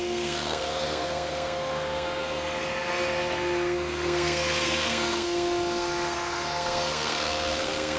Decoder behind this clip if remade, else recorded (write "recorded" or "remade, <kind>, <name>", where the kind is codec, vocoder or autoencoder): remade, codec, SNAC